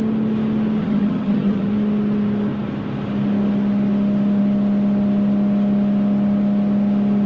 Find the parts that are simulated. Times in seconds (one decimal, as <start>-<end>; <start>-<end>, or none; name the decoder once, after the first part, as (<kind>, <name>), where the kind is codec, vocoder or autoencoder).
0.8-1.7 (vocoder, HiFi-GAN)